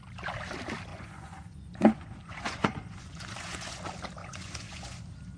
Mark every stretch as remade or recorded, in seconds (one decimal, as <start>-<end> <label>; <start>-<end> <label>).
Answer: 0.0-0.9 recorded; 0.9-3.8 remade; 3.8-4.2 recorded; 4.2-5.0 remade; 5.0-5.4 recorded